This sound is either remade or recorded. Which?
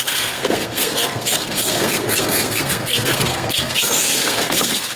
remade